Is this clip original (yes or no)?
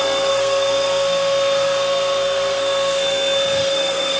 no